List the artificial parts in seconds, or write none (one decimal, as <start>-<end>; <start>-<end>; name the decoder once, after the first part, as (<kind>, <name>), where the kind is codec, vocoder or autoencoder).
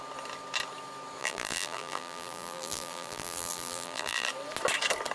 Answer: 1.2-4.3 (vocoder, BigVGAN v2)